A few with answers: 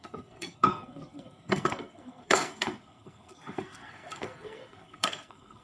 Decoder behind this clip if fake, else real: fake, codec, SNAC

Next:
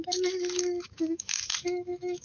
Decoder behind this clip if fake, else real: fake, autoencoder, DAC-VAE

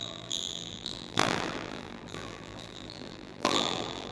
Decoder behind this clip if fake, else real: fake, vocoder, BigVGAN v2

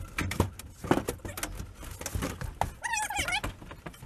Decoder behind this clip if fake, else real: real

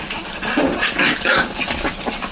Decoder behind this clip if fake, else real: real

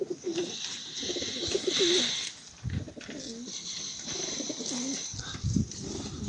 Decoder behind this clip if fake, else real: real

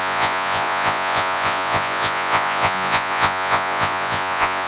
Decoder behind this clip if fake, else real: fake, vocoder, Vocos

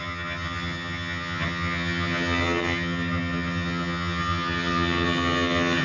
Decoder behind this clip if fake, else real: fake, vocoder, HiFi-GAN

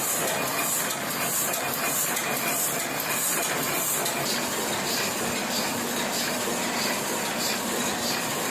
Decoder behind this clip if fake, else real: real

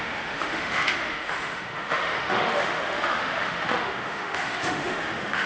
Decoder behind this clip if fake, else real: fake, autoencoder, DAC-VAE